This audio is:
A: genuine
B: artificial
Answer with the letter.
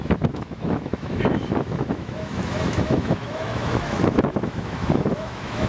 B